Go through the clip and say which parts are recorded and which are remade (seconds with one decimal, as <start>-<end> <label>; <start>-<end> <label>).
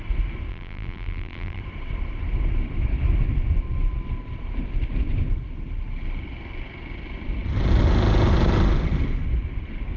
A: 0.0-0.5 recorded; 0.5-1.6 remade; 1.6-10.0 recorded